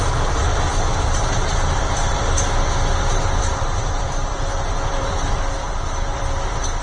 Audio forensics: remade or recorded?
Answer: remade